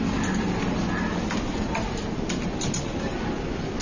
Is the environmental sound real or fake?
real